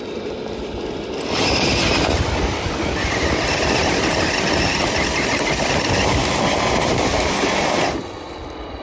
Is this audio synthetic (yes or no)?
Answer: yes